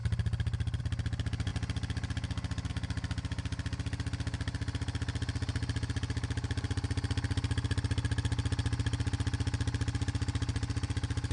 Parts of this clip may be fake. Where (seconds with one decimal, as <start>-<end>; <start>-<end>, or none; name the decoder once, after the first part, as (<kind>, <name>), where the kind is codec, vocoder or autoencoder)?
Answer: none